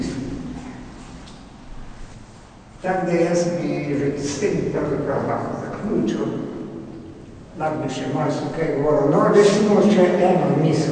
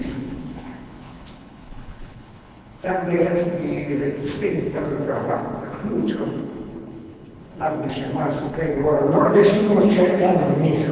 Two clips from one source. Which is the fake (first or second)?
second